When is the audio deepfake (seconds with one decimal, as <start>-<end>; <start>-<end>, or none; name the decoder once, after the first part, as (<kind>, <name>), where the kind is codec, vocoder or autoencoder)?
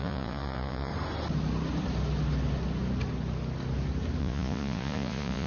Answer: 0.0-0.9 (vocoder, Vocos); 4.2-5.5